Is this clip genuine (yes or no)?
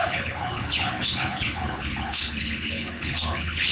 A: no